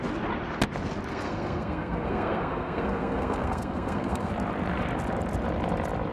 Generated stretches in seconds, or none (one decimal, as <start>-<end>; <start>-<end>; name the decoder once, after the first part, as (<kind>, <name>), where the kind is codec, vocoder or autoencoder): 1.1-4.3 (codec, SNAC)